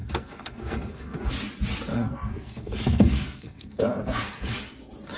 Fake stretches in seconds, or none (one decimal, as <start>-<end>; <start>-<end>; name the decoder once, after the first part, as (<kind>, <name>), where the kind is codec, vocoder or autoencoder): 0.0-1.3 (codec, SNAC); 1.9-4.6

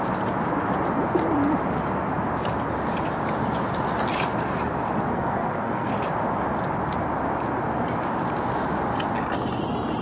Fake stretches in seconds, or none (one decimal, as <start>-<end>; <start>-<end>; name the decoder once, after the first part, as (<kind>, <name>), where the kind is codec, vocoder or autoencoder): 5.1-5.9 (codec, SNAC)

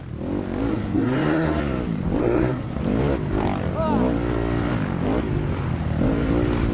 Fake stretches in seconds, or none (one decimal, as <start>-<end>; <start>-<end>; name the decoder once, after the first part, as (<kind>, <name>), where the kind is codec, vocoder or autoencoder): 0.7-1.6 (codec, SNAC); 2.2-2.8

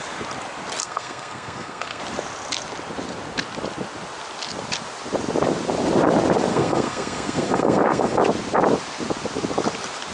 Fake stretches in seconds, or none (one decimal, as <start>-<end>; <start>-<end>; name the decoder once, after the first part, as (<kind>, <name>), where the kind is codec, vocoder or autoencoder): 0.8-2.0 (codec, SNAC); 6.5-8.2

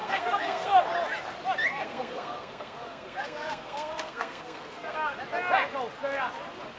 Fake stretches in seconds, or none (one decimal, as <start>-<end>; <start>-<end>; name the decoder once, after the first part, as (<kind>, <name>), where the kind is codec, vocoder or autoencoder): 0.0-0.8 (codec, SNAC); 1.7-5.2

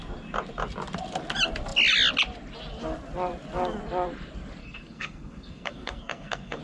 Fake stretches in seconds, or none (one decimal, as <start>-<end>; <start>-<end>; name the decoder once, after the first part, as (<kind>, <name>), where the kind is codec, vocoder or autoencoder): 4.6-6.6 (codec, SNAC)

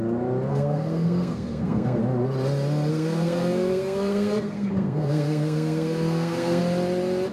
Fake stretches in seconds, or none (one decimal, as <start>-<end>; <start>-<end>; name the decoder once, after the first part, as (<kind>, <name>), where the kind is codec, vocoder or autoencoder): 0.5-2.0 (codec, SNAC); 2.9-6.6

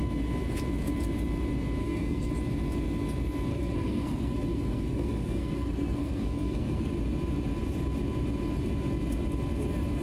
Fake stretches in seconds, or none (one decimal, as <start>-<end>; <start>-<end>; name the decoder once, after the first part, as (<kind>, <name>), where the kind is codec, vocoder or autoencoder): 1.8-2.3 (codec, SNAC); 3.5-6.9